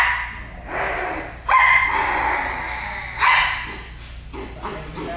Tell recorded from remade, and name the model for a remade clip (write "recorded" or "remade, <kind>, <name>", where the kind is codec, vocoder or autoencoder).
recorded